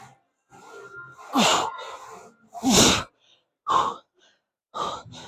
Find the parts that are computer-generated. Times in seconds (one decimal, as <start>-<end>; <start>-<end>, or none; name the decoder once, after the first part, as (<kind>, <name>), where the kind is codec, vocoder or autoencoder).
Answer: none